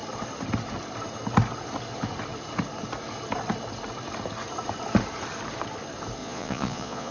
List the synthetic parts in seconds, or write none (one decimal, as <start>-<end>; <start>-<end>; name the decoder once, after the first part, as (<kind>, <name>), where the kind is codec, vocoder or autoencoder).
6.2-7.1 (vocoder, Vocos)